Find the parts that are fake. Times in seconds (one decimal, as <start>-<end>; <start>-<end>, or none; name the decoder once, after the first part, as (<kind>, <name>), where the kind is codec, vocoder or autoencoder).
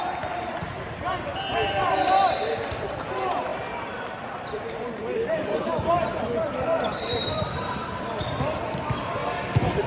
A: 0.0-1.3 (vocoder, BigVGAN v2); 2.4-9.2